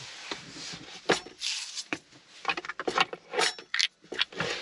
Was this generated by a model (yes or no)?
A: no